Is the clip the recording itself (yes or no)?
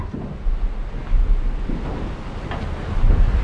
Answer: yes